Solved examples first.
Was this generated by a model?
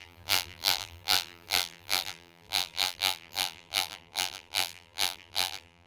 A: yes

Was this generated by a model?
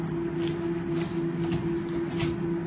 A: no